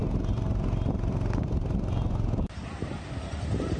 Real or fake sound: real